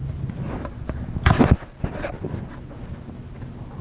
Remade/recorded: recorded